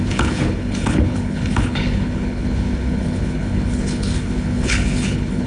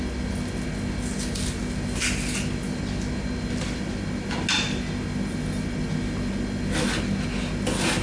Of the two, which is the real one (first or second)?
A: second